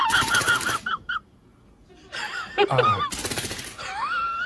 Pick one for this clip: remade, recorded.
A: recorded